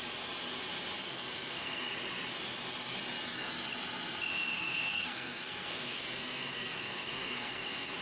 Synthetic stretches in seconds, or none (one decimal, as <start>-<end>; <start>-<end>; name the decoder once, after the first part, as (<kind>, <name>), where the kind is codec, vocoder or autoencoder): 1.0-1.9 (codec, SNAC); 4.3-8.0